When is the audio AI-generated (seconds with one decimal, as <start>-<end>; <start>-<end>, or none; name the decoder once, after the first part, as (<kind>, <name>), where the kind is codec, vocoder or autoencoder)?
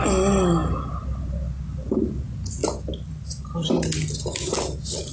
none